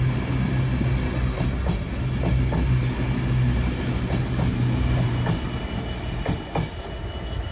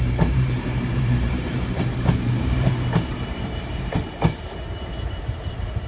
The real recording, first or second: first